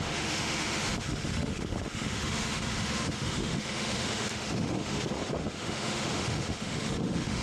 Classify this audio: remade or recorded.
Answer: remade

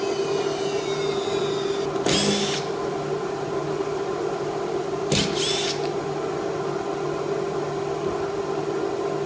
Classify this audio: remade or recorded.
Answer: recorded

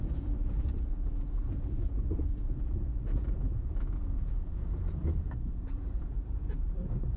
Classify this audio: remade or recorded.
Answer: remade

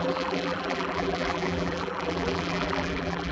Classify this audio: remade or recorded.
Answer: remade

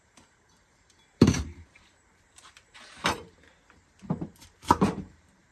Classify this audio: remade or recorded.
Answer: remade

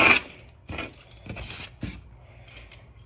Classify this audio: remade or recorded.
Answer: recorded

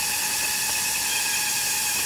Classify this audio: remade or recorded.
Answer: recorded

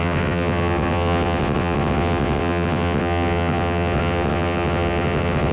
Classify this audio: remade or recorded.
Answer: remade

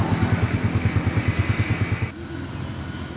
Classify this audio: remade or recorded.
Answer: recorded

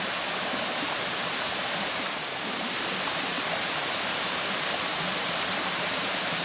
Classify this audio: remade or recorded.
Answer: remade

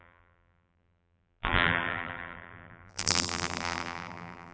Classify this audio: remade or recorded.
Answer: remade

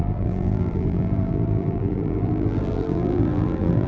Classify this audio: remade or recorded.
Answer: remade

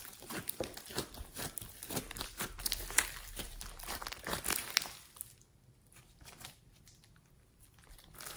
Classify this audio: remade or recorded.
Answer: remade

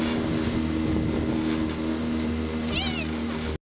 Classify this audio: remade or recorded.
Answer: recorded